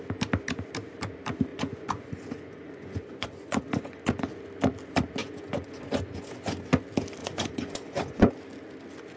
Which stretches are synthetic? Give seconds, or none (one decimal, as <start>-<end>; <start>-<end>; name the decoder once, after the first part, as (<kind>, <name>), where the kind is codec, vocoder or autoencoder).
1.5-4.2 (vocoder, Vocos); 5.2-6.8; 7.2-8.3